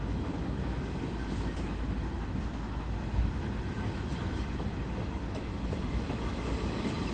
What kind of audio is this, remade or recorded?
remade